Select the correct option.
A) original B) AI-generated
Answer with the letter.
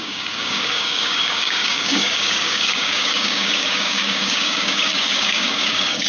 B